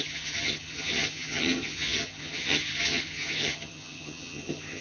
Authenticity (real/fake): fake